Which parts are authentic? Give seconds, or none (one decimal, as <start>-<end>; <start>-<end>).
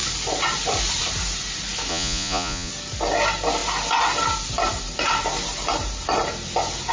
0.0-1.9; 2.7-6.9